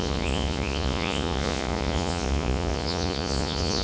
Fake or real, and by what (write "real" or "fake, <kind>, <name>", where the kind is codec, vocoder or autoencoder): fake, vocoder, Vocos